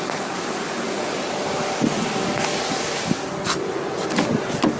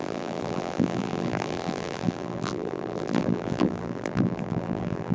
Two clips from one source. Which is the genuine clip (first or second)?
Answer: first